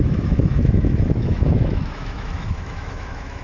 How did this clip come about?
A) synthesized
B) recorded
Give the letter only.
A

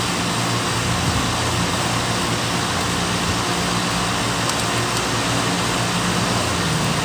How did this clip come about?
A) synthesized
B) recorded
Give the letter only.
B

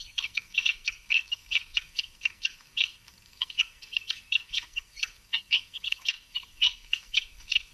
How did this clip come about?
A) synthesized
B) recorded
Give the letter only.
A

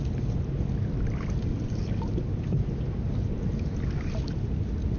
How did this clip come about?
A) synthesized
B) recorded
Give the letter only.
B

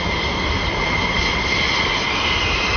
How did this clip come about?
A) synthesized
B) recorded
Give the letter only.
B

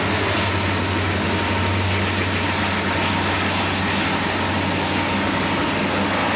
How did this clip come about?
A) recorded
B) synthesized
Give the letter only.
A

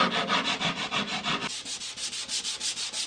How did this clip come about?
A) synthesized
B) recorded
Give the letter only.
B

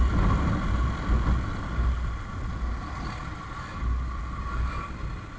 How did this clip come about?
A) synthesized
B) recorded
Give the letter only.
B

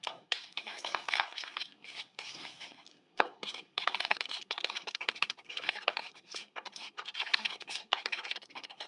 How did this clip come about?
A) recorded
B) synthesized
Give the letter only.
B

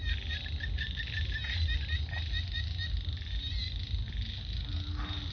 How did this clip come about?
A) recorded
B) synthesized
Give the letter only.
A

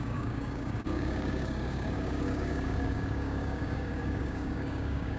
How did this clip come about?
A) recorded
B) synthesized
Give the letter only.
B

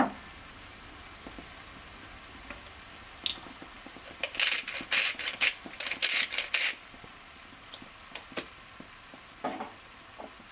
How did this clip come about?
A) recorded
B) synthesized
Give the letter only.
A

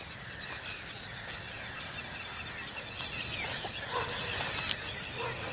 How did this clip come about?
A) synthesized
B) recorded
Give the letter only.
B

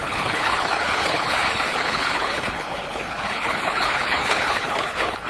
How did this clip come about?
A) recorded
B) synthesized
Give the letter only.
B